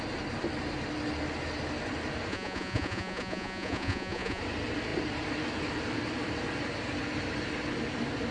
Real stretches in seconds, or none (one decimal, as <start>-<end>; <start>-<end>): 0.0-2.3; 4.4-8.3